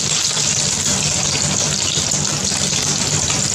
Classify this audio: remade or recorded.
recorded